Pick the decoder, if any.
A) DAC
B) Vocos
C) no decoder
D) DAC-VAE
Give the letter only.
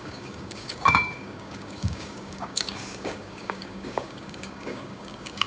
A